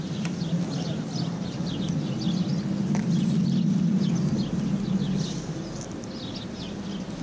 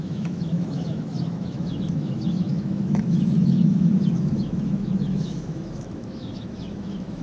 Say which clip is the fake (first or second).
second